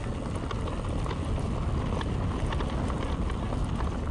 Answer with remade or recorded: recorded